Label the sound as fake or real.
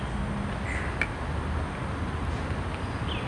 real